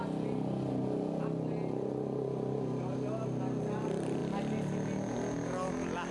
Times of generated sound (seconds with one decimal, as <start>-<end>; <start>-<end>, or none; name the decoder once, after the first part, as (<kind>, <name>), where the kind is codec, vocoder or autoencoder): none